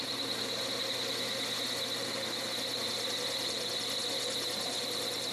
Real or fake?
real